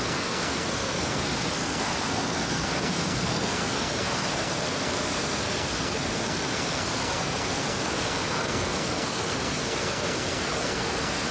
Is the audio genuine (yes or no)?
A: no